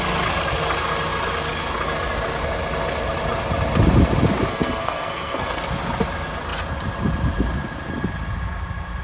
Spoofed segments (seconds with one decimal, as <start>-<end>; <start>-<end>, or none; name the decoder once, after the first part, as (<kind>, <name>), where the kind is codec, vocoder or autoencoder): 4.5-5.6 (codec, SNAC)